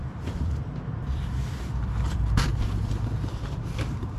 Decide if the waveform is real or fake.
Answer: fake